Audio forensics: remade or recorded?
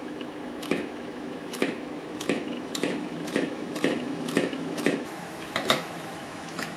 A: remade